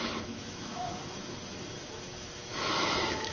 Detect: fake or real fake